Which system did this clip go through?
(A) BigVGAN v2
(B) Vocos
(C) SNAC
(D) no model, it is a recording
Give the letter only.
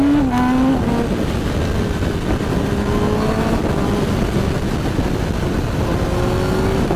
D